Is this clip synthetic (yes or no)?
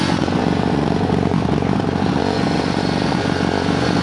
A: yes